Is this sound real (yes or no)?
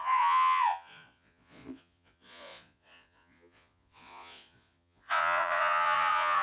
no